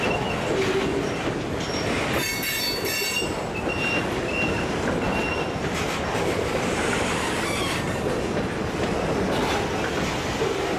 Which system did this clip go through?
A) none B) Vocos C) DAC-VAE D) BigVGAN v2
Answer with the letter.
A